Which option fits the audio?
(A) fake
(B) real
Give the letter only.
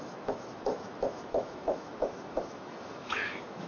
A